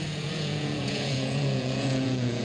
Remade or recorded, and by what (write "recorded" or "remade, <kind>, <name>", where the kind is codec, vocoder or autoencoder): remade, vocoder, Vocos